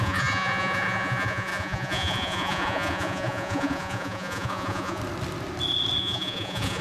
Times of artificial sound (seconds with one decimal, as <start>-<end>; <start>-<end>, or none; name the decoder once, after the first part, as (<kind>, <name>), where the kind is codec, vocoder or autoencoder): 0.0-5.0 (vocoder, Vocos); 6.0-6.8